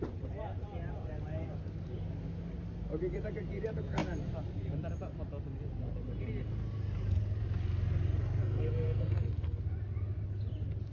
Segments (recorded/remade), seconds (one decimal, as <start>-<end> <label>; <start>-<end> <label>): 0.0-8.4 recorded; 8.4-9.6 remade; 9.6-10.9 recorded